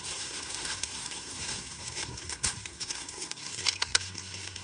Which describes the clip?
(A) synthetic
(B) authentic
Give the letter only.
A